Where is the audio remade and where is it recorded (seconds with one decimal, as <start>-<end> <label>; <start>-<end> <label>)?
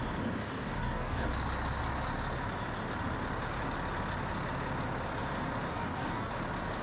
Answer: 0.0-0.4 recorded; 0.4-1.3 remade; 1.3-5.7 recorded; 5.7-6.3 remade; 6.3-6.8 recorded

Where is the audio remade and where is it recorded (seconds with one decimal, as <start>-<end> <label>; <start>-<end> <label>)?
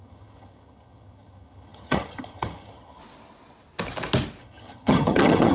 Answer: 0.0-3.0 remade; 3.0-4.4 recorded; 4.4-5.5 remade